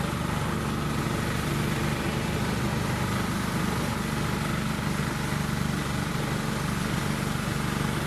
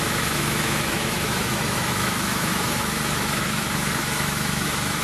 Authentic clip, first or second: first